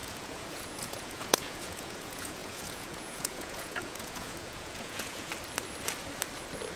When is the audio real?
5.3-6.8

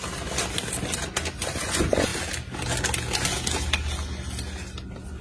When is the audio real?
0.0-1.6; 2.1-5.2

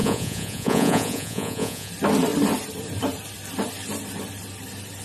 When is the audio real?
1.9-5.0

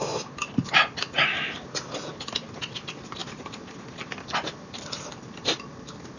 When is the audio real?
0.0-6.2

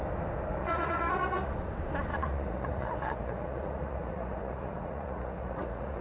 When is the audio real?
0.0-0.6; 1.5-2.1